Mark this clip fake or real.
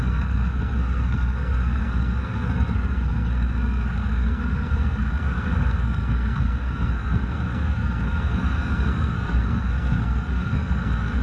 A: fake